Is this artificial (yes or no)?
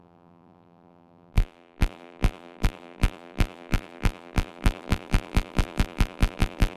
yes